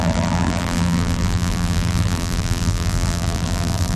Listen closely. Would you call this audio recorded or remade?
remade